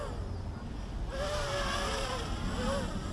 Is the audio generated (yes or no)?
no